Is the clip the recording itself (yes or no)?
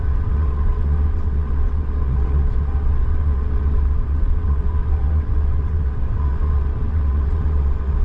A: no